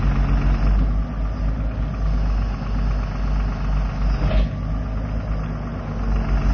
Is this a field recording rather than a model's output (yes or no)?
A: yes